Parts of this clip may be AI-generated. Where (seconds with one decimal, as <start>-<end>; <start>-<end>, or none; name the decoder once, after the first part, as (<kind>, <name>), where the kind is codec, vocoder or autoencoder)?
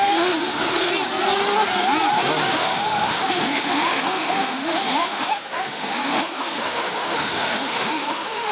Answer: 0.0-0.9 (autoencoder, DAC-VAE); 2.5-8.5